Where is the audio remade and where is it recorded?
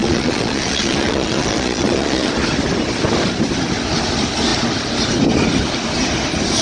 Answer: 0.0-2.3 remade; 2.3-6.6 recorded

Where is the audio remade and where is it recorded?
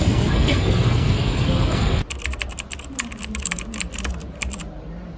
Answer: 0.0-2.0 remade; 2.0-5.2 recorded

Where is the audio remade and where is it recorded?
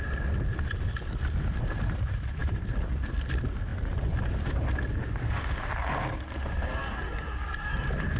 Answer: 0.0-5.0 recorded; 5.0-5.7 remade; 5.7-8.2 recorded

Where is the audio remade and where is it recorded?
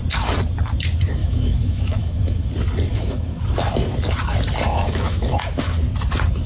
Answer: 0.0-1.2 recorded; 1.2-2.5 remade; 2.5-2.9 recorded; 2.9-3.4 remade; 3.4-4.7 recorded; 4.7-5.7 remade; 5.7-6.5 recorded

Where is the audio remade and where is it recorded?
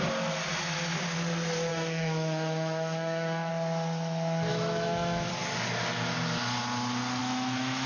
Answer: 0.0-1.7 recorded; 1.7-3.5 remade; 3.5-4.5 recorded; 4.5-5.3 remade; 5.3-7.2 recorded; 7.2-7.9 remade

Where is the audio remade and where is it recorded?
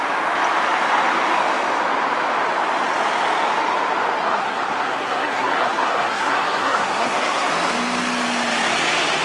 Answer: 0.0-4.2 recorded; 4.2-7.5 remade; 7.5-9.2 recorded